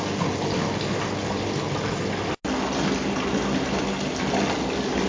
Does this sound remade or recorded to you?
recorded